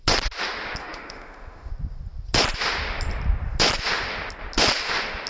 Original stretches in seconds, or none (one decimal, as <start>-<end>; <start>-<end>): 0.0-0.8; 1.7-5.3

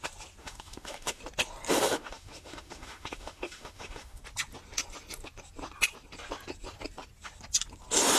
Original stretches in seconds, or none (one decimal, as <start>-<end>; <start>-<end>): 0.0-0.4; 1.2-1.7; 4.2-8.2

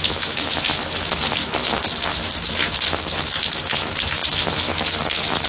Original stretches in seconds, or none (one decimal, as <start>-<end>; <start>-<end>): none

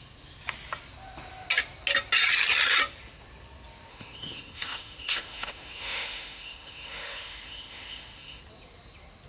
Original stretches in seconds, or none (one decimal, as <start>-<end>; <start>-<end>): 0.0-3.9; 8.4-9.3